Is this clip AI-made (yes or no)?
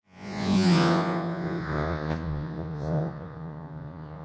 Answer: yes